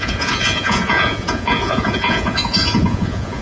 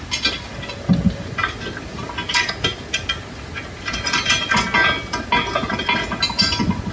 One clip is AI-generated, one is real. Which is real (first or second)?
second